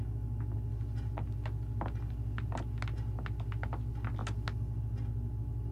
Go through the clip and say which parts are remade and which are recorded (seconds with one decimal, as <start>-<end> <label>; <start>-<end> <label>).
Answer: 0.0-5.7 recorded